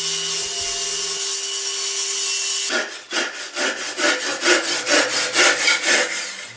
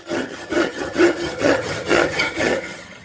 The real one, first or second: first